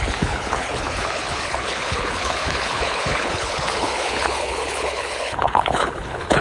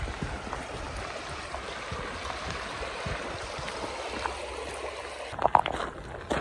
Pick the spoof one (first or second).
first